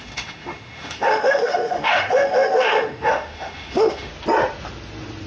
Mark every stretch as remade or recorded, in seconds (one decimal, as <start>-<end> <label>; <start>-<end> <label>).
0.0-4.1 remade; 4.1-5.3 recorded